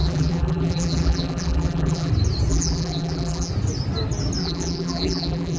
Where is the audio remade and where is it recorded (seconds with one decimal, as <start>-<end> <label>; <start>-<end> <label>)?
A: 0.0-2.1 remade; 2.1-2.5 recorded; 2.5-3.5 remade; 3.5-4.4 recorded; 4.4-5.6 remade